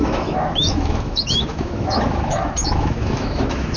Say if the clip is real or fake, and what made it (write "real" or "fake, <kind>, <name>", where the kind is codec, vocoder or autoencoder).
fake, autoencoder, DAC-VAE